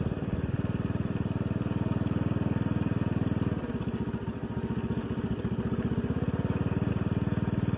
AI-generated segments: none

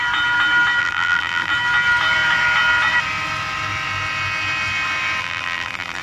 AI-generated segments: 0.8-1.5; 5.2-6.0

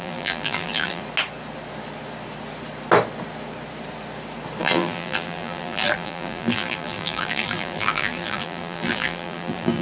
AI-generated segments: 0.0-1.0; 4.6-9.8

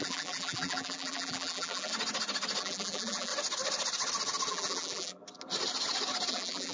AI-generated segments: 0.0-1.9; 2.6-3.3; 4.5-5.2; 6.3-6.7

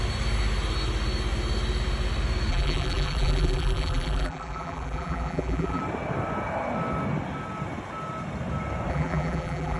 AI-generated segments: 2.5-5.8; 8.9-9.8

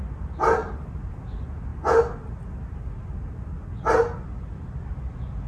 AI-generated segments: none